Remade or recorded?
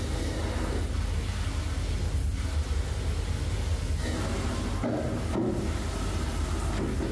recorded